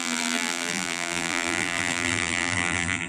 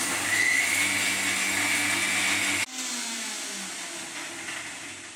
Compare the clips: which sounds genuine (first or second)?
second